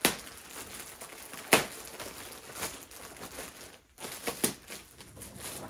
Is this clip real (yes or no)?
yes